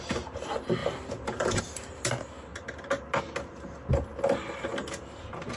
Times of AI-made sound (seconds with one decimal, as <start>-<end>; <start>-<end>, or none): 0.8-1.6